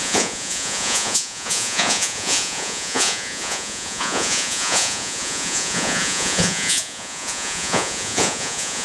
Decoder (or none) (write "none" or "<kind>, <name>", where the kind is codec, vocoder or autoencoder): vocoder, Vocos